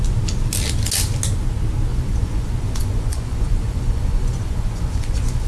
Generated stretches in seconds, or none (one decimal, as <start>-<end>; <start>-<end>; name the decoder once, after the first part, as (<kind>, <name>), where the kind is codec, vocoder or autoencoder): 1.9-5.5 (vocoder, Vocos)